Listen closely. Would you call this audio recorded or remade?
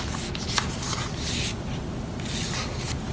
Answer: recorded